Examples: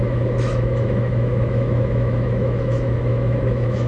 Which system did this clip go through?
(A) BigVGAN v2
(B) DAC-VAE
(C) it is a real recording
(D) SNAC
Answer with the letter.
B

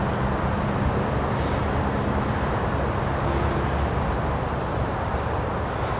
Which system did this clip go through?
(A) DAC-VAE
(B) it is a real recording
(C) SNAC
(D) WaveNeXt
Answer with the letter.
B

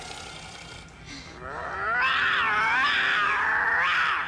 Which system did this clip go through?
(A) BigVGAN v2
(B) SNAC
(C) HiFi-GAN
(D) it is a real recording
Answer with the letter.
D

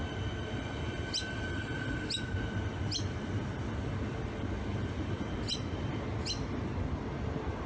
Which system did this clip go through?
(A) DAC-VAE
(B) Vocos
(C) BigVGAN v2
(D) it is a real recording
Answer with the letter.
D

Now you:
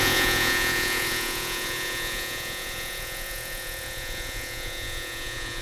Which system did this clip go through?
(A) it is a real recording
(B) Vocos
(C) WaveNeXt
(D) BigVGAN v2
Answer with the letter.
B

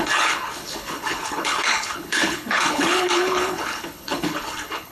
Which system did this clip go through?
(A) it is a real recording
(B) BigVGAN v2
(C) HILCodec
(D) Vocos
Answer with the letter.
C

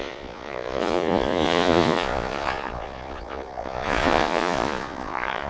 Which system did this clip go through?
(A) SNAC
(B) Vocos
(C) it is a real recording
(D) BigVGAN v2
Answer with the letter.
B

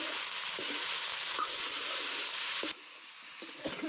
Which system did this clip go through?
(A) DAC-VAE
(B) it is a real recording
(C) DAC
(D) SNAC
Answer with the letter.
B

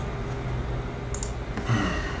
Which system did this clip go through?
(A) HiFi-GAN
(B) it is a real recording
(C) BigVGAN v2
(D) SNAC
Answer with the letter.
B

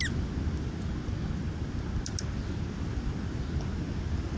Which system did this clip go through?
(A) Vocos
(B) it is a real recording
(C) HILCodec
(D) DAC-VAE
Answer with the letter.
B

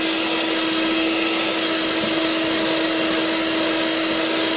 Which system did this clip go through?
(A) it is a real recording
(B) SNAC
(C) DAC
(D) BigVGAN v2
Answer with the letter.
A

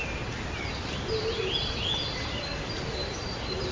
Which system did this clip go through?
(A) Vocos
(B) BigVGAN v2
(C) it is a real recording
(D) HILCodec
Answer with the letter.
C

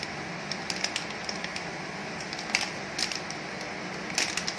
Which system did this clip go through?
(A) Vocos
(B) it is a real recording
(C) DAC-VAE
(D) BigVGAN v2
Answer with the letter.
B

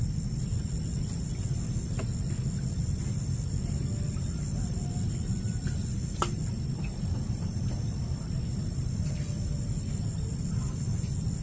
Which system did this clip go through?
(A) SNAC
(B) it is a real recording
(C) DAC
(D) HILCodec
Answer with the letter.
B